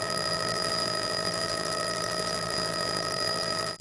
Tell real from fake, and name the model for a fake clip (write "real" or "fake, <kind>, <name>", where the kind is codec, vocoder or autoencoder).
fake, vocoder, BigVGAN v2